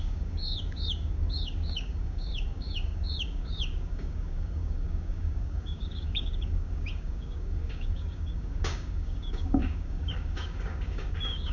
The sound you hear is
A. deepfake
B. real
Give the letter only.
A